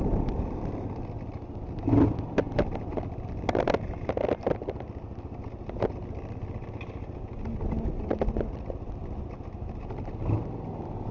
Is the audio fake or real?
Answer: real